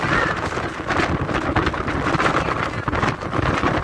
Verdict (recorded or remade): recorded